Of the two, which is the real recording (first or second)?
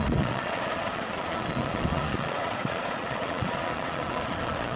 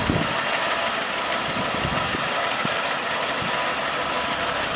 second